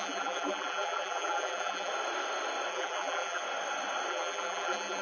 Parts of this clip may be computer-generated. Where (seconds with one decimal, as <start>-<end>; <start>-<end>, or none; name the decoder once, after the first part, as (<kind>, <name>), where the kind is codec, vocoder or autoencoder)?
0.0-1.9 (vocoder, BigVGAN v2); 2.7-3.4; 4.1-5.0